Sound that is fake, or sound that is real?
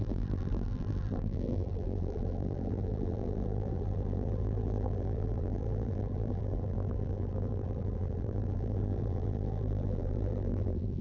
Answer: fake